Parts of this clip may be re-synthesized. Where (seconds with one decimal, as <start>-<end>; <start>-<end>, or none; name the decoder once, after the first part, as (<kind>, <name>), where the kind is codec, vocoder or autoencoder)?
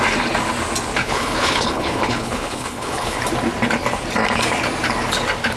1.0-3.2 (codec, HILCodec)